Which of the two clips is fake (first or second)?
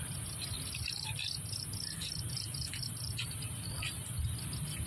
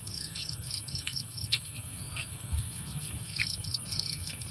second